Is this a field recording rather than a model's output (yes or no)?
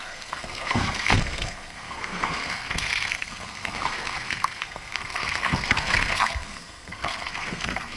no